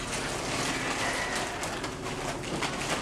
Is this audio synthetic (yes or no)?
no